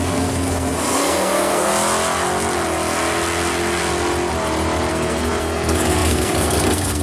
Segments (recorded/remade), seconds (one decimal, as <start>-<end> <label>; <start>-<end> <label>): 0.0-1.7 remade; 1.7-4.9 recorded; 4.9-7.0 remade